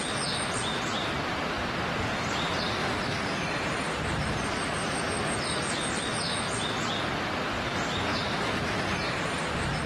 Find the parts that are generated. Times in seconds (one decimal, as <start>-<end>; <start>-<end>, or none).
0.7-1.7; 2.8-5.9; 8.1-9.9